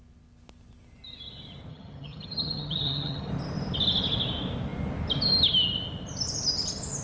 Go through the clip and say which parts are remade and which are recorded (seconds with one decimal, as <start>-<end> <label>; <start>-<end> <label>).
0.0-1.7 recorded; 1.7-3.3 remade; 3.3-7.0 recorded